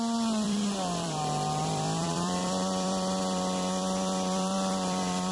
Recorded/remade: remade